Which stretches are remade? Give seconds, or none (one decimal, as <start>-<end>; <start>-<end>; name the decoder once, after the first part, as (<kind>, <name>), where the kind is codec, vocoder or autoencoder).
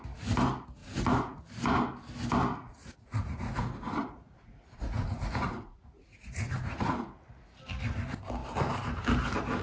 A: 0.8-1.4 (vocoder, Vocos); 2.5-6.9